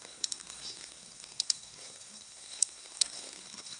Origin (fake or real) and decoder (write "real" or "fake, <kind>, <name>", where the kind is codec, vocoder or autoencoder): fake, codec, SNAC